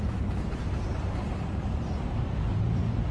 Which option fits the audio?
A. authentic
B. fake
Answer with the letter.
B